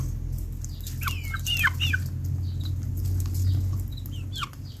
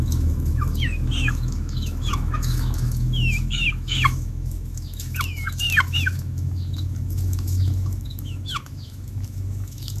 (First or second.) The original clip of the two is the first